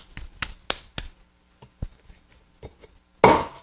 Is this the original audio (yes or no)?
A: yes